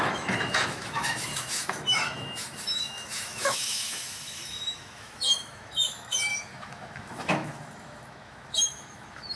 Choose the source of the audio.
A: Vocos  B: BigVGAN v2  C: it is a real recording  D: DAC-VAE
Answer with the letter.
D